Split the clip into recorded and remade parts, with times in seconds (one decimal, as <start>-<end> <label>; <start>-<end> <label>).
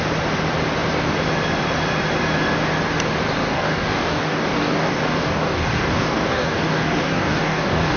0.0-3.4 recorded; 3.4-8.0 remade